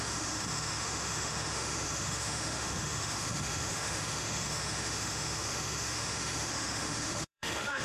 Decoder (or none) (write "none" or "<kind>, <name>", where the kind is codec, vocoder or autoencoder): autoencoder, DAC-VAE